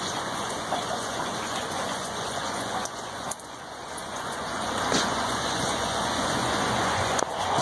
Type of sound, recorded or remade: remade